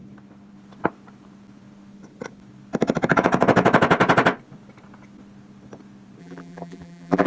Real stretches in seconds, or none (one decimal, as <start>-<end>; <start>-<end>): 0.0-6.2